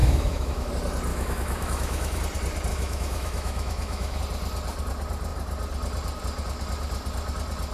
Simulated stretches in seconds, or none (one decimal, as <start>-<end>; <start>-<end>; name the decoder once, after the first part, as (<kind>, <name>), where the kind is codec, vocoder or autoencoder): 0.0-0.7 (autoencoder, DAC-VAE); 1.1-2.2; 2.7-4.2